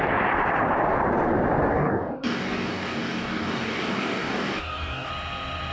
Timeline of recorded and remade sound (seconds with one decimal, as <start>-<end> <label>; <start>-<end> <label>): 0.0-1.7 recorded; 1.7-5.1 remade; 5.1-5.7 recorded